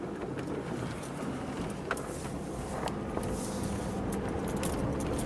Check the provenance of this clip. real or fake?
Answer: real